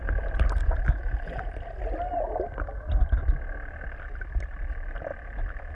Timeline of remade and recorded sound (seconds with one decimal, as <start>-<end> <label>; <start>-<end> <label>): 0.0-5.7 recorded